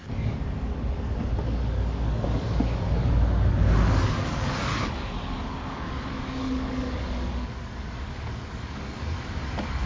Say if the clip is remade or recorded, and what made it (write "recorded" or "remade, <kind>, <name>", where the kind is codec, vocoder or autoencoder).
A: remade, codec, DAC